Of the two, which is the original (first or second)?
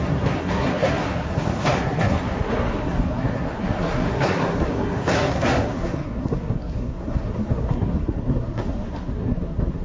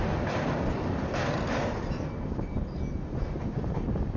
second